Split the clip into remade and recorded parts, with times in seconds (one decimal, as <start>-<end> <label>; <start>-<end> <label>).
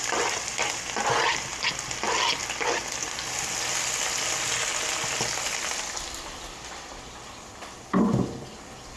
0.0-9.0 recorded